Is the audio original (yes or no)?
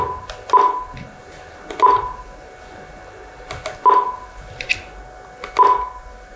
yes